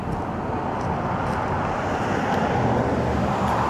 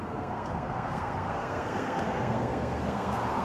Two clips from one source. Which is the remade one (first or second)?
second